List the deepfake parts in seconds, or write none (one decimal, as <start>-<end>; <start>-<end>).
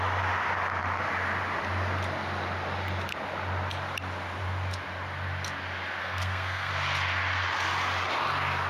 6.0-6.7